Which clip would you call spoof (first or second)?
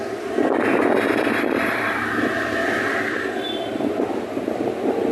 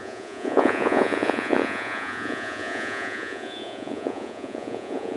second